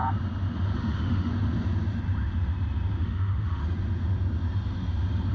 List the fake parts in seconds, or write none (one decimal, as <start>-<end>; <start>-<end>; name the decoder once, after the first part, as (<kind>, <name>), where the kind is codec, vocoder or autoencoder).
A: 0.8-1.3 (autoencoder, DAC-VAE); 3.0-3.6